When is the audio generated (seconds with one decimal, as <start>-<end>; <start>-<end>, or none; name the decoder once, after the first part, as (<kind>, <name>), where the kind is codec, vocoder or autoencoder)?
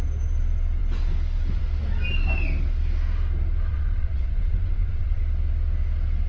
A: 3.7-5.2 (vocoder, Vocos)